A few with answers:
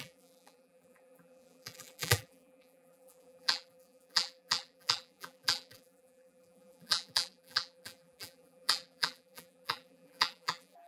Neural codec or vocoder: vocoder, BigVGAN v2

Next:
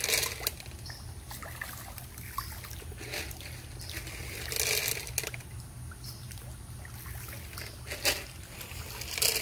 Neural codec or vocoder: none